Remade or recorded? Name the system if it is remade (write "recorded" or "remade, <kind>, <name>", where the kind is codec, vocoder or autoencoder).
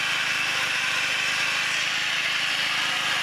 recorded